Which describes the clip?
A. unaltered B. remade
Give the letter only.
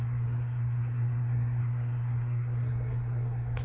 B